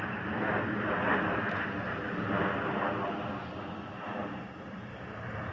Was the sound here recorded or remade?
recorded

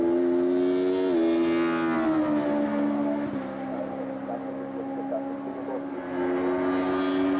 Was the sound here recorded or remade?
recorded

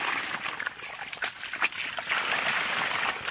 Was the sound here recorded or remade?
recorded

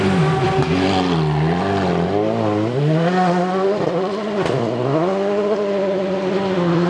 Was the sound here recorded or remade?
remade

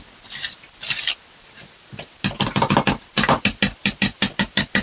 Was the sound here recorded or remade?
remade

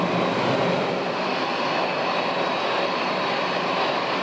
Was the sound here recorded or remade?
recorded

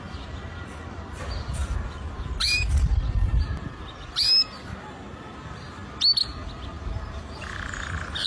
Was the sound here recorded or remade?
recorded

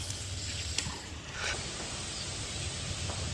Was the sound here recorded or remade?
recorded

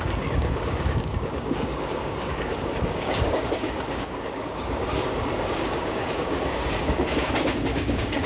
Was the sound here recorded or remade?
remade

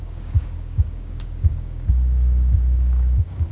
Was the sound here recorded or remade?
remade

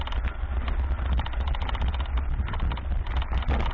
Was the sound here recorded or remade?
recorded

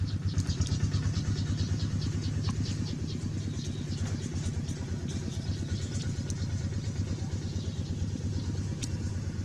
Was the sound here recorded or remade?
remade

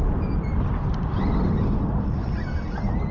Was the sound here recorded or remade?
recorded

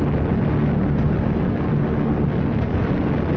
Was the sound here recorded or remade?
recorded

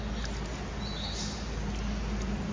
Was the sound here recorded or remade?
recorded